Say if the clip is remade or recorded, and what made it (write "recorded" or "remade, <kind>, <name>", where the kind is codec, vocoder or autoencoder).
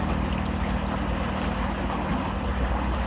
recorded